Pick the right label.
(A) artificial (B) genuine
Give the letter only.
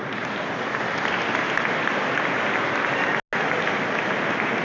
B